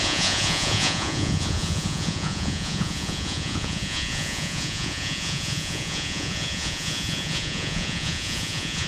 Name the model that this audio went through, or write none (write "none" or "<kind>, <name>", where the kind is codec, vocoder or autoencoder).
vocoder, Vocos